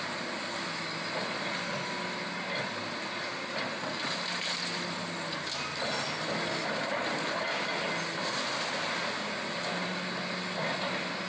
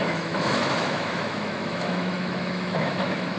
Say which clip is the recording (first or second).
first